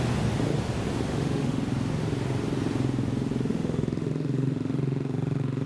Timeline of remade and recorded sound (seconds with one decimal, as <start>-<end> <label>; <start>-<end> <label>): 0.0-1.1 recorded; 1.1-1.6 remade; 1.6-3.5 recorded; 3.5-5.7 remade